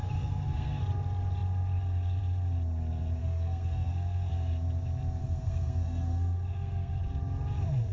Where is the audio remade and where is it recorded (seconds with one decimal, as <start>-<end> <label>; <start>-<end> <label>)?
0.0-0.8 remade; 0.8-3.2 recorded; 3.2-4.3 remade; 4.3-5.2 recorded; 5.2-7.0 remade; 7.0-7.9 recorded